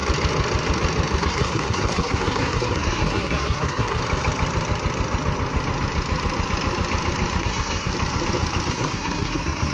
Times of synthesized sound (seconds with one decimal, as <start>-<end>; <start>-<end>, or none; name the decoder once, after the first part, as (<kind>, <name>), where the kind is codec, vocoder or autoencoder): 1.2-4.0 (codec, SNAC); 7.4-7.9; 8.7-9.7